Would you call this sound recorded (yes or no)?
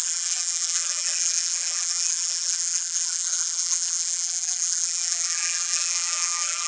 no